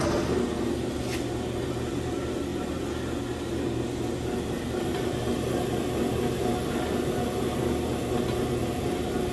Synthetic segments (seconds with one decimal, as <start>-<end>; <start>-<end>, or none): none